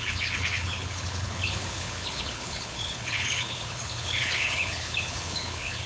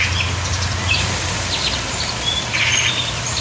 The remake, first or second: first